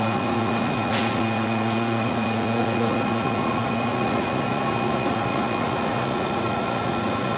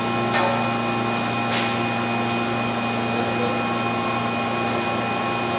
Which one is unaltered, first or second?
second